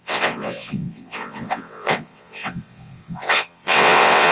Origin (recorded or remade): remade